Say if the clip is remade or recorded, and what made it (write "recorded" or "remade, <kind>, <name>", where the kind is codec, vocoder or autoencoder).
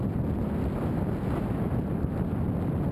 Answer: recorded